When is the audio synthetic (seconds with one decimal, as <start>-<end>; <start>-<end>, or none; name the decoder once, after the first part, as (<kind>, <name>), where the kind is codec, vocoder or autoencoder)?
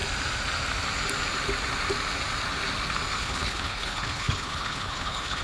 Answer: 3.2-5.4 (codec, HILCodec)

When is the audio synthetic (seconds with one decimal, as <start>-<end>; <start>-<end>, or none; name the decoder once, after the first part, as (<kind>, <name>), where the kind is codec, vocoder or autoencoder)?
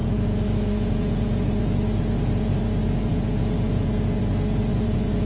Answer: 0.0-1.6 (vocoder, Vocos); 2.8-4.2; 4.7-5.3